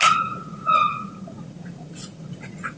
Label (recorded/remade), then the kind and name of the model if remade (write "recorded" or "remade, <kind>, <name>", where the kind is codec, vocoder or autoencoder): remade, vocoder, Vocos